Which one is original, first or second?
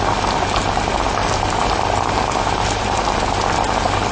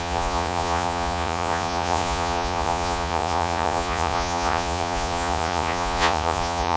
first